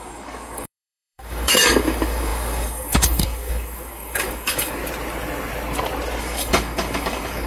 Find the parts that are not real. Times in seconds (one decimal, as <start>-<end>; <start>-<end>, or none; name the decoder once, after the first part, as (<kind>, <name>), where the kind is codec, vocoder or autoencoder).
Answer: 0.0-4.8 (codec, DAC); 6.2-7.5